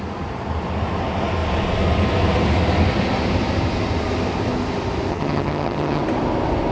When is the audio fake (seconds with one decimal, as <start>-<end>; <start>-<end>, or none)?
5.1-6.0